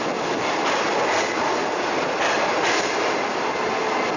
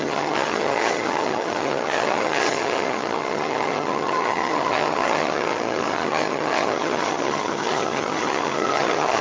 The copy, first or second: second